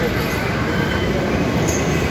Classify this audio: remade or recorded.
recorded